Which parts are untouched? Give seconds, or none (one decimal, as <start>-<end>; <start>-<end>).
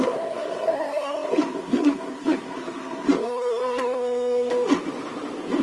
4.5-5.6